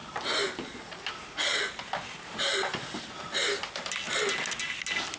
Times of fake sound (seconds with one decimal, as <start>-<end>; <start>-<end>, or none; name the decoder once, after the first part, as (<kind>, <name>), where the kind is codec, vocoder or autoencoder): none